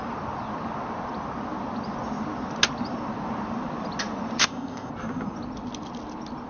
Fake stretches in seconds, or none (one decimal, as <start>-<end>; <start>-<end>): 4.4-4.9